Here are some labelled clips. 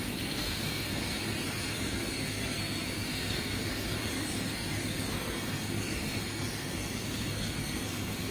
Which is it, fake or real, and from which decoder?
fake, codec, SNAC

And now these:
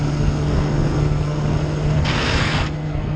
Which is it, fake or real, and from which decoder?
fake, codec, SNAC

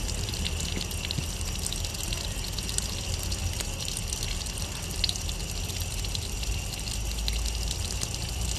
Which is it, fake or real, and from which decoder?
real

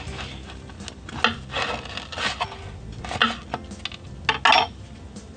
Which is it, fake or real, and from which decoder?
real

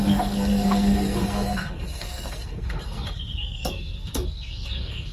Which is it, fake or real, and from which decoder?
fake, codec, SNAC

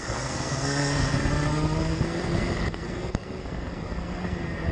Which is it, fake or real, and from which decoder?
fake, codec, SNAC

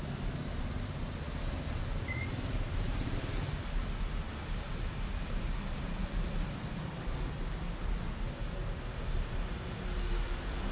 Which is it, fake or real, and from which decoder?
real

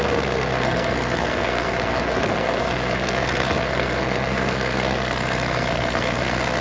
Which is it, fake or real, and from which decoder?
fake, codec, SNAC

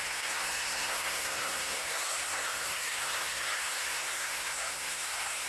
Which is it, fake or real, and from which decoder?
fake, codec, SNAC